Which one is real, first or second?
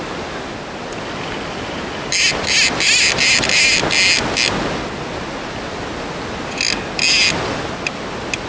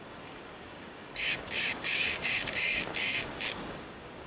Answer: first